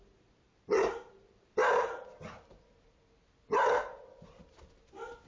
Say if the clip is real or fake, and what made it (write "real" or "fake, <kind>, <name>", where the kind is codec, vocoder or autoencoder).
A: real